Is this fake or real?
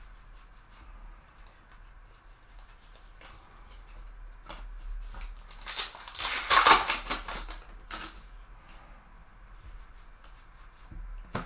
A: real